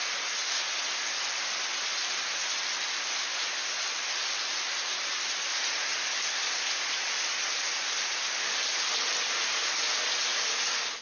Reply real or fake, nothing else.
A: real